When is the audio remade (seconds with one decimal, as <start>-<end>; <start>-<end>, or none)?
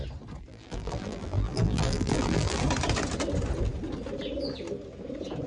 0.5-2.6